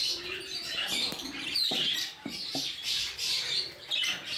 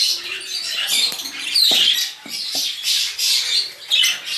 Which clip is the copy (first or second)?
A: first